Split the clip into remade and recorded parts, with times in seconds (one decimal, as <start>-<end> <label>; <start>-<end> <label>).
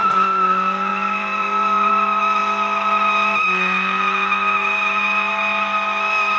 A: 0.0-0.9 recorded; 0.9-1.9 remade; 1.9-6.4 recorded